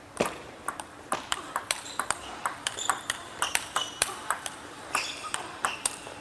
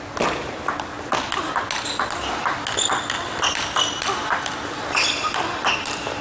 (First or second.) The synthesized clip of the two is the first